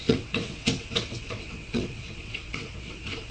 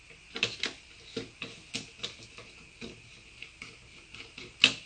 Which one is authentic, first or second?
second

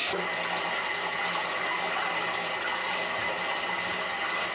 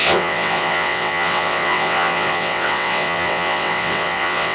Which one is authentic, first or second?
first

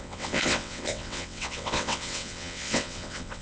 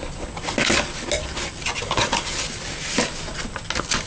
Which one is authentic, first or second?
second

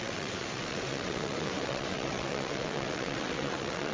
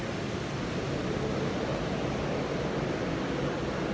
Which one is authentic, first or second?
second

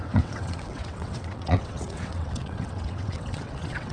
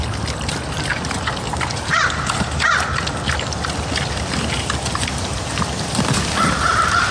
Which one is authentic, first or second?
second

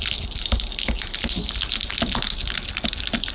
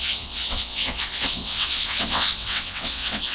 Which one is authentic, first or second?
first